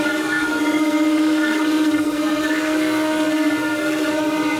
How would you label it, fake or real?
fake